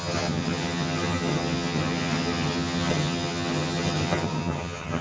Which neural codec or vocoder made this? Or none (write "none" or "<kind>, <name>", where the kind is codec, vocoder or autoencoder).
vocoder, HiFi-GAN